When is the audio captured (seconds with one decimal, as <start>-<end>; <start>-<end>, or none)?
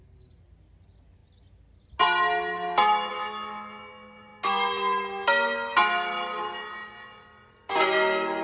0.0-8.4